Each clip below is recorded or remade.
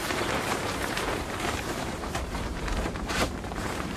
remade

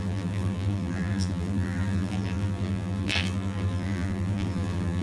remade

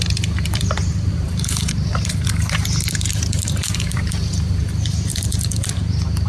remade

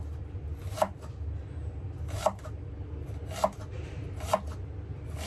recorded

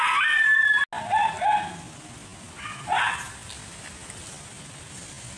recorded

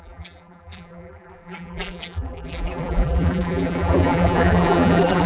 remade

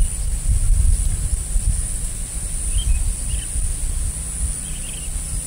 recorded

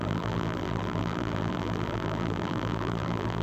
remade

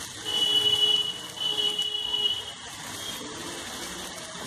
recorded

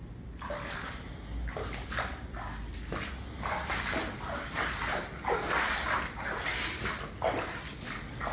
recorded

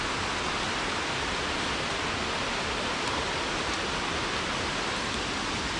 recorded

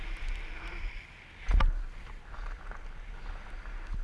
recorded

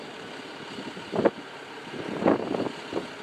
recorded